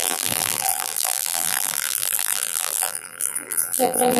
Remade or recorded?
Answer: remade